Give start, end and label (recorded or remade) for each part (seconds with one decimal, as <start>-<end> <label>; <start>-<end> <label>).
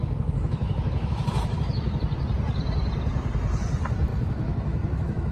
0.0-2.0 remade; 2.0-4.1 recorded; 4.1-5.3 remade